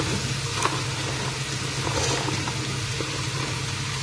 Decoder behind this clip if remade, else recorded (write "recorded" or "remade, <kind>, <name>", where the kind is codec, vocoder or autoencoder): recorded